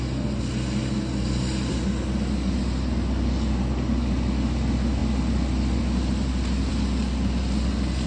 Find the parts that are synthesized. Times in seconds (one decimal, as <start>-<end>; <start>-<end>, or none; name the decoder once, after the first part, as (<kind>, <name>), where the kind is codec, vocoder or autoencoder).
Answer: none